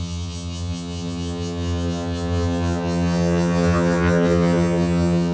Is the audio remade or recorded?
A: remade